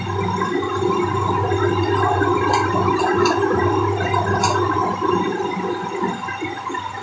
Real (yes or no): yes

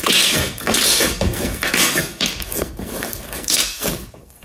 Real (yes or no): no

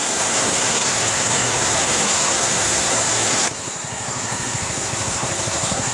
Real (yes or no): no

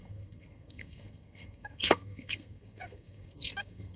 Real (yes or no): no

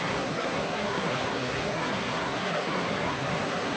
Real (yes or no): no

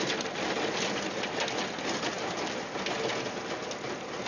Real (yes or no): yes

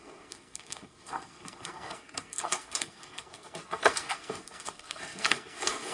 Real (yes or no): no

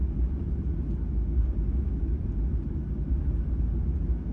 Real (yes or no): yes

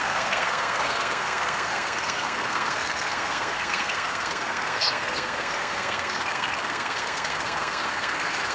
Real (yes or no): no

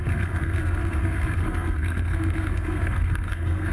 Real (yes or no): no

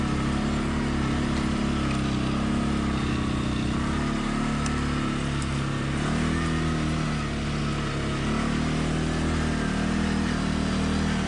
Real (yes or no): yes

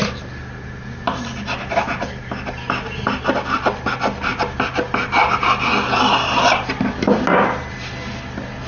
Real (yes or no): yes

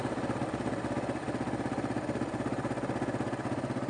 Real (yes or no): yes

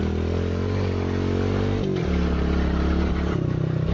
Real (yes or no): yes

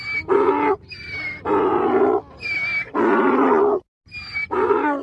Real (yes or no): yes